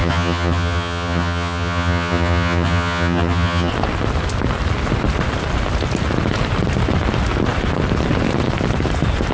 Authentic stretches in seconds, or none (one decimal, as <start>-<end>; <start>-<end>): 3.7-9.3